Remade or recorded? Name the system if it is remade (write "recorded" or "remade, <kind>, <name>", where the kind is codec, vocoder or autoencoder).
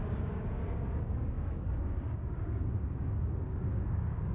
remade, codec, DAC